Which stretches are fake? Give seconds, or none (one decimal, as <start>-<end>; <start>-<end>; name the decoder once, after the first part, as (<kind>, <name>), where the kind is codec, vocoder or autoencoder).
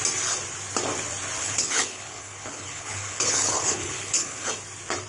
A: 1.4-4.5 (codec, HILCodec)